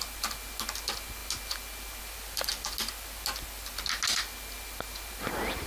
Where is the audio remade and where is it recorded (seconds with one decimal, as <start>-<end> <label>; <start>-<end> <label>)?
0.0-5.7 recorded